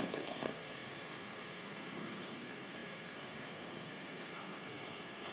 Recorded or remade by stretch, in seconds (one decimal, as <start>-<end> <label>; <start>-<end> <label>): 0.0-5.3 remade